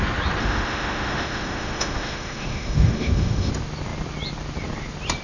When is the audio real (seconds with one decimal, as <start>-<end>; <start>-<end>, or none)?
0.0-0.4; 3.5-5.2